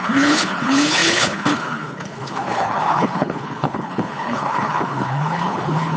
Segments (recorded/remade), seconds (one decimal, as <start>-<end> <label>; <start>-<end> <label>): 0.0-6.0 remade